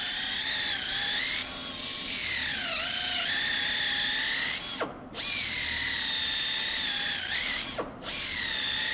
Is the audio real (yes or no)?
yes